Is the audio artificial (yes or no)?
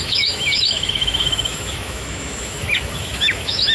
yes